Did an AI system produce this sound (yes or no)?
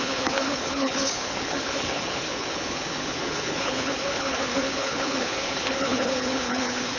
yes